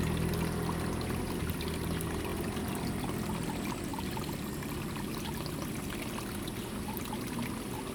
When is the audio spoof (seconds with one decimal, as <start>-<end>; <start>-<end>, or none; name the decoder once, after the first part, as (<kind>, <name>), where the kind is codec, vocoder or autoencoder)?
2.3-3.5 (vocoder, BigVGAN v2); 3.9-5.4